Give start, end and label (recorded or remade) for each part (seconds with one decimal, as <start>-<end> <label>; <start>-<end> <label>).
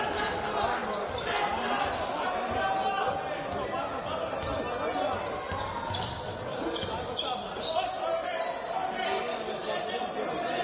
0.0-10.6 recorded